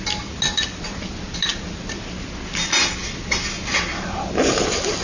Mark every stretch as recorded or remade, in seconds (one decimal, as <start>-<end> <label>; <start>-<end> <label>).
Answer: 0.0-5.0 recorded